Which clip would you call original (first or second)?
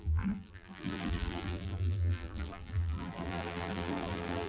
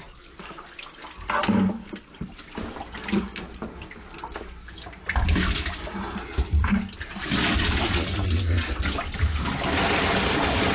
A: second